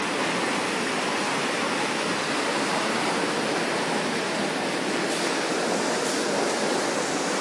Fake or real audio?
real